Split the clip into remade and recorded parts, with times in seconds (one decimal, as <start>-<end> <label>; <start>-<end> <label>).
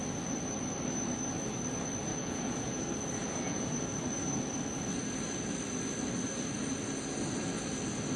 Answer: 0.0-2.1 recorded; 2.1-2.7 remade; 2.7-3.2 recorded; 3.2-3.7 remade; 3.7-8.2 recorded